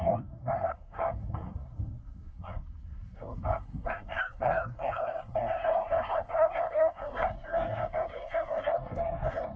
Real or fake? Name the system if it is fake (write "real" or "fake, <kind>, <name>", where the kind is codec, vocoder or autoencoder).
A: fake, codec, SNAC